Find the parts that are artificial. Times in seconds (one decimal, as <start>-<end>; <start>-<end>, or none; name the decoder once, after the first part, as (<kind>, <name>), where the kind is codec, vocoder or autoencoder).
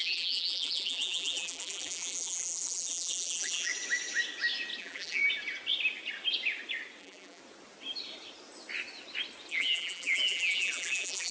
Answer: 0.0-3.7 (vocoder, BigVGAN v2); 4.8-5.2; 7.0-7.4; 9.5-11.3